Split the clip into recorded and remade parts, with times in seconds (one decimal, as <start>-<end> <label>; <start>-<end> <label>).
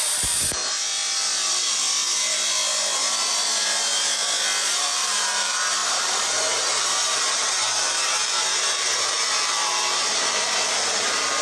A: 0.0-0.6 remade; 0.6-4.8 recorded; 4.8-11.4 remade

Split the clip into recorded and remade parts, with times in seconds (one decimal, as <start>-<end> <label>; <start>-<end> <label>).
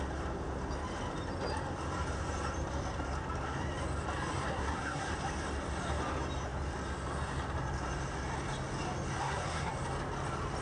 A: 0.0-4.5 recorded; 4.5-5.1 remade; 5.1-9.2 recorded; 9.2-9.7 remade; 9.7-10.6 recorded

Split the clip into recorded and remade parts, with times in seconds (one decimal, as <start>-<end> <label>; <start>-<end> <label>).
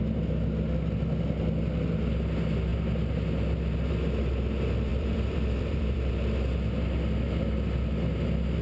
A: 0.0-4.9 recorded; 4.9-6.1 remade; 6.1-8.6 recorded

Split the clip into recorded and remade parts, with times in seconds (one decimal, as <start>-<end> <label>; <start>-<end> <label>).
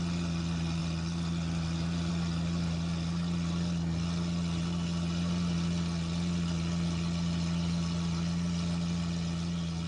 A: 0.0-9.9 recorded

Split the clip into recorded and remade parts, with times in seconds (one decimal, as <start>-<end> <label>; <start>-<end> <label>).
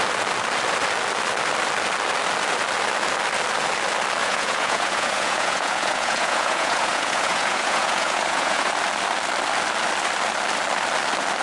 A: 0.0-4.2 recorded; 4.2-8.7 remade; 8.7-11.4 recorded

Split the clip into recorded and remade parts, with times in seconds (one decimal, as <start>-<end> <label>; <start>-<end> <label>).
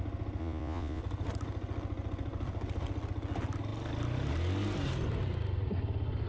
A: 0.0-0.4 recorded; 0.4-1.0 remade; 1.0-6.3 recorded